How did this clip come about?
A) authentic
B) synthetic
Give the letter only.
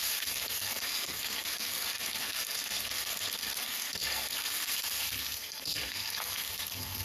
B